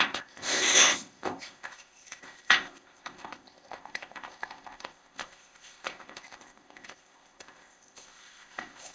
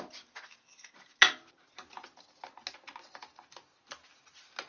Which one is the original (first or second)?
second